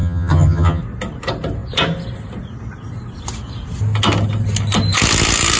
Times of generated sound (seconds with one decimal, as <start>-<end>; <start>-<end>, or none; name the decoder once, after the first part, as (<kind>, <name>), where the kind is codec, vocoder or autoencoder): 0.0-0.8 (vocoder, HiFi-GAN)